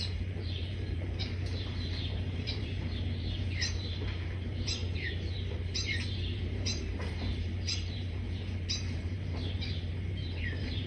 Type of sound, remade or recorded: remade